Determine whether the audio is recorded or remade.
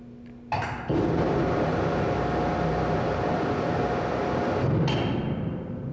recorded